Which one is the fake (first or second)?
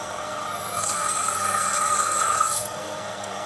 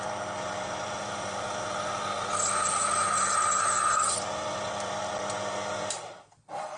first